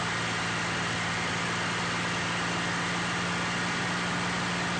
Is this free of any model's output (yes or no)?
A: yes